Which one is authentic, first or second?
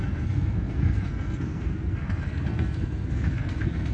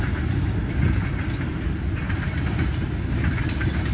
second